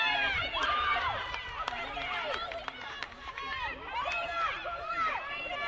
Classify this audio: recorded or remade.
remade